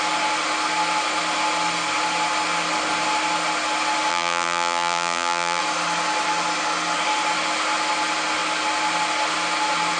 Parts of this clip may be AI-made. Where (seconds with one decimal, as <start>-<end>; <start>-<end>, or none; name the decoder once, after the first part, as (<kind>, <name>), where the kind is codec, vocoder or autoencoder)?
4.1-5.6 (vocoder, BigVGAN v2)